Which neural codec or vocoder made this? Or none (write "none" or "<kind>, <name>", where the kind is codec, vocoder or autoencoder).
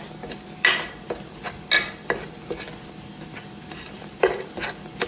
none